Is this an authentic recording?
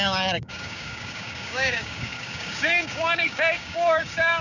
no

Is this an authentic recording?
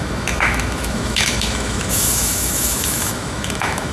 no